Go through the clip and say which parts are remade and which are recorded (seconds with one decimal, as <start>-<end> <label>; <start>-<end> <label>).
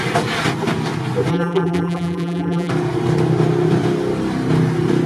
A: 0.0-1.3 recorded; 1.3-2.7 remade; 2.7-5.1 recorded